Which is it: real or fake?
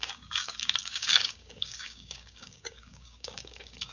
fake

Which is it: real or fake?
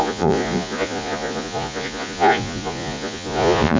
fake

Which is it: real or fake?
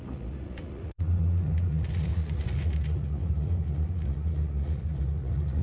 fake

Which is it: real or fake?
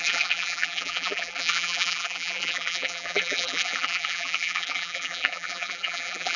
fake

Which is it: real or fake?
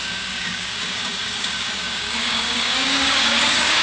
fake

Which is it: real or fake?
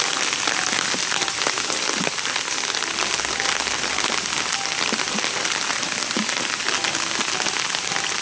real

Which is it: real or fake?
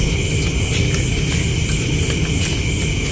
real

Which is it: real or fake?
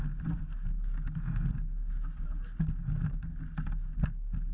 real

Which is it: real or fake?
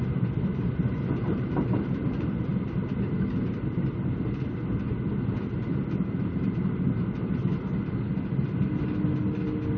real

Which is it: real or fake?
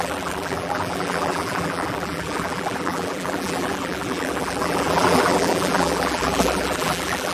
fake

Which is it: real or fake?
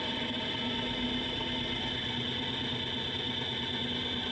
real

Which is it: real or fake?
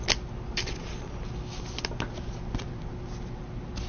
real